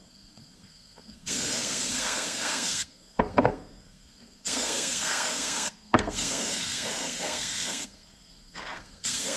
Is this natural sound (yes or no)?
no